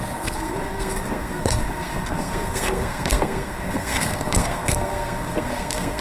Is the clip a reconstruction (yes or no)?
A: yes